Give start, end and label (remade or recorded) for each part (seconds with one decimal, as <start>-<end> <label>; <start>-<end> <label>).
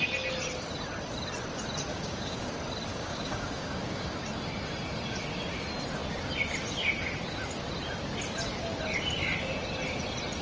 0.0-1.9 recorded; 1.9-2.5 remade; 2.5-2.9 recorded; 2.9-4.2 remade; 4.2-10.4 recorded